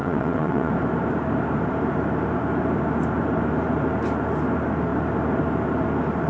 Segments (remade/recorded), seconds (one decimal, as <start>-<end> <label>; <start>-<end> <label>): 0.0-0.7 remade; 0.7-6.3 recorded